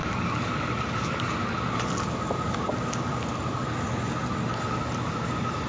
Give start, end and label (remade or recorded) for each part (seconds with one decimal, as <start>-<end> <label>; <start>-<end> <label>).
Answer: 0.0-1.3 remade; 1.3-5.7 recorded